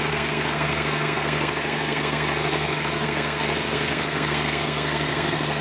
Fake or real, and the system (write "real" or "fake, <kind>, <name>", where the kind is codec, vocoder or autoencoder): fake, codec, SNAC